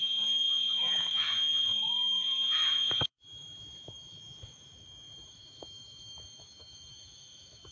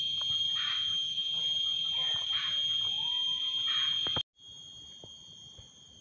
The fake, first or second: first